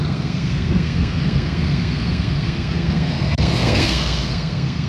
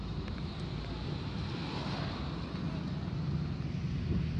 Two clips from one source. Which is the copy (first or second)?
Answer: first